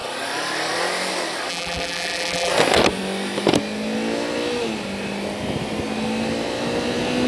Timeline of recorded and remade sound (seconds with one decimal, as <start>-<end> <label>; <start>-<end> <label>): 0.0-1.5 recorded; 1.5-2.5 remade; 2.5-7.3 recorded